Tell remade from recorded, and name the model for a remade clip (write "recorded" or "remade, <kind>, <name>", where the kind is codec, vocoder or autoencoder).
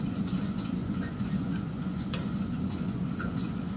remade, vocoder, Vocos